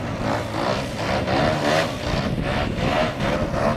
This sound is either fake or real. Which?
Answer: real